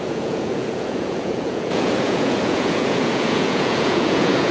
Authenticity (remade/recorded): remade